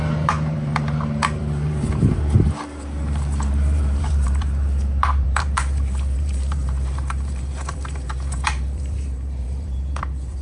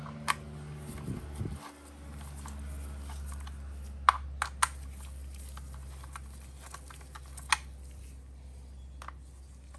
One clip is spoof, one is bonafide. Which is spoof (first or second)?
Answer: first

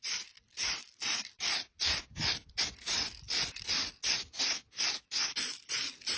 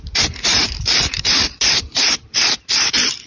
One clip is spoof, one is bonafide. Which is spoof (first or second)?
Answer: second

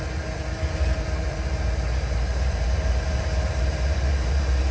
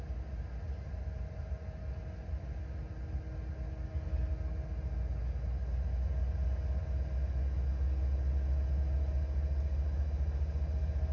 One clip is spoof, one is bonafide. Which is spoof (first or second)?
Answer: first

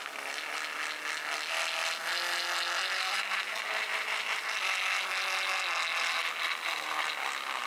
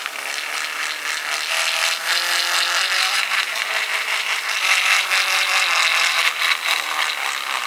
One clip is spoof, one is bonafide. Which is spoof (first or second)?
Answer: second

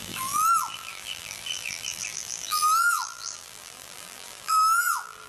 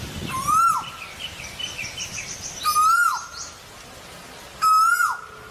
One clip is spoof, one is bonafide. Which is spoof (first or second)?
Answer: first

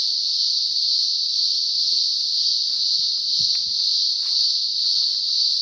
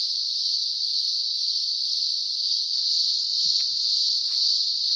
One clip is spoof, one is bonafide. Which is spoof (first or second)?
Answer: second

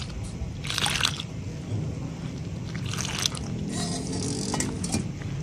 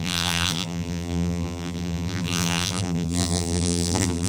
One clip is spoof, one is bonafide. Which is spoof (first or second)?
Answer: second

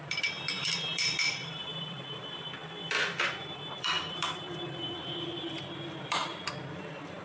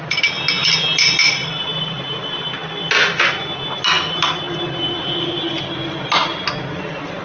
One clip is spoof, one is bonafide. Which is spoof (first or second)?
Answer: first